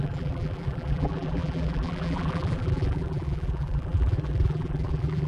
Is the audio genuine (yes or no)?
no